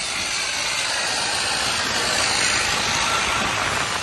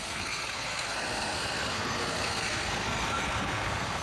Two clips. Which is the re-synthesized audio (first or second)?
second